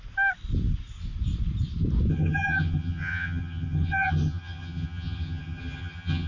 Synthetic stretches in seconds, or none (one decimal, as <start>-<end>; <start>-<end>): 2.1-6.3